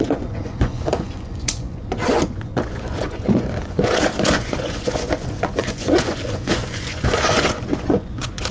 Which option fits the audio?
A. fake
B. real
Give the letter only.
A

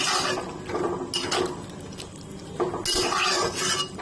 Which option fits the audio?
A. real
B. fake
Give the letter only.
A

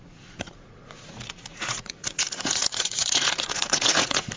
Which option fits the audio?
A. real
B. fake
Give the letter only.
B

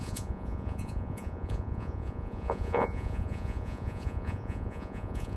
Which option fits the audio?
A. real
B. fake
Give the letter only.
B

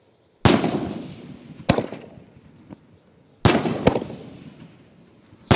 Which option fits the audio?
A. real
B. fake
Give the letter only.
A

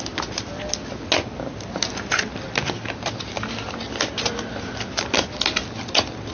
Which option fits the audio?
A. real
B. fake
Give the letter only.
A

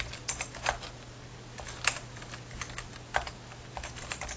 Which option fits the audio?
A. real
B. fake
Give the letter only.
A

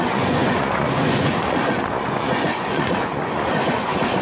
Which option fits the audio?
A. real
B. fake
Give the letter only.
B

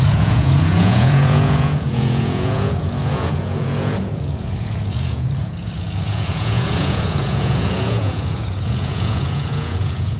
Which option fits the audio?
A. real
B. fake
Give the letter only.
B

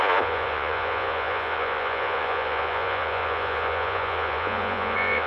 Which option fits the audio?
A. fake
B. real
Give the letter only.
A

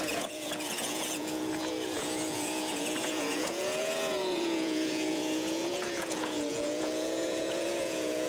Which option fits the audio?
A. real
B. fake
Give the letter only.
B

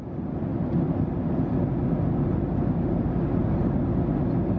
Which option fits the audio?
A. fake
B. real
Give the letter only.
B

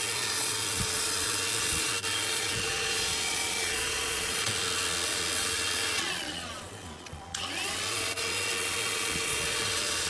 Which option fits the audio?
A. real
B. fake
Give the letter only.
B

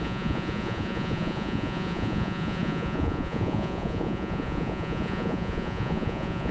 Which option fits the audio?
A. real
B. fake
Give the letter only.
B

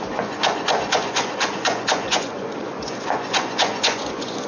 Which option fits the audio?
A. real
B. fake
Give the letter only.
B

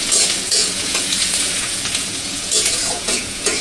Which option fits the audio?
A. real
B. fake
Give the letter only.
B